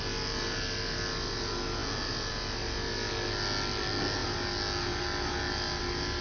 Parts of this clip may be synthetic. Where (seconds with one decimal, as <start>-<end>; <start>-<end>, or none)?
none